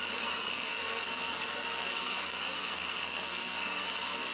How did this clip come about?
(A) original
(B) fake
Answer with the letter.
B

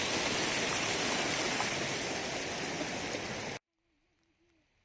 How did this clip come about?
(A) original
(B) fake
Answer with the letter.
A